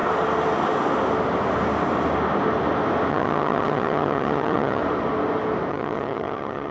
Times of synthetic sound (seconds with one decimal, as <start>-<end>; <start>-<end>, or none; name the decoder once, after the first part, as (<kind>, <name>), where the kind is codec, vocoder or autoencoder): 3.1-4.8 (vocoder, HiFi-GAN); 5.7-6.7